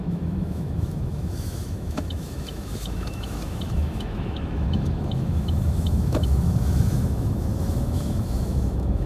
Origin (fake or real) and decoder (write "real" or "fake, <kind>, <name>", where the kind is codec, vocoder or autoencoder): fake, autoencoder, DAC-VAE